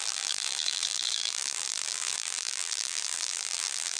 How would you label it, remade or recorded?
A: remade